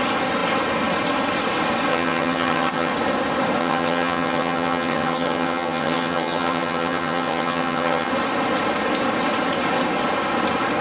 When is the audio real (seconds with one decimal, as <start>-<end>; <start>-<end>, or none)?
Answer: 0.0-1.9; 2.9-3.6; 8.1-10.8